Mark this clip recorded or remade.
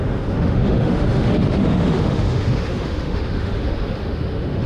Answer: remade